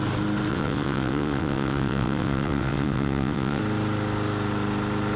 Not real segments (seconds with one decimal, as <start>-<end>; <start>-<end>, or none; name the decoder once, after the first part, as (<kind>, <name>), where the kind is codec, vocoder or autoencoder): 0.5-3.6 (vocoder, WaveNeXt)